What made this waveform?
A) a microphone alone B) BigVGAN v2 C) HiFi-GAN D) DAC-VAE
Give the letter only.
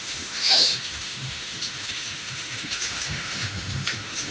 D